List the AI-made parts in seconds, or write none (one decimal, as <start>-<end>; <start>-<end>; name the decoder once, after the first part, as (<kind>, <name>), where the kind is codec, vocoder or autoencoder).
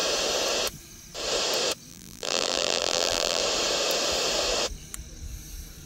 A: 1.9-3.4 (vocoder, BigVGAN v2)